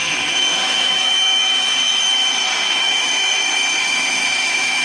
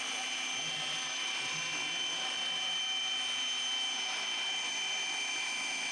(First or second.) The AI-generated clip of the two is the first